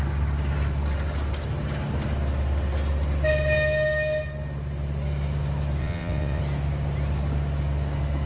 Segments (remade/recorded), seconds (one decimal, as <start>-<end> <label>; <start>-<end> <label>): 0.0-5.8 recorded; 5.8-6.4 remade; 6.4-8.3 recorded

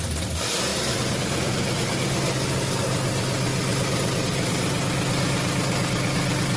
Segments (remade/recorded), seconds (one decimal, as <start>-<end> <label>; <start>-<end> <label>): 0.0-6.6 recorded